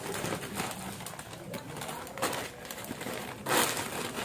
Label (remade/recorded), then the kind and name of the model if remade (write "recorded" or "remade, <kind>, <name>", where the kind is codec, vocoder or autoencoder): recorded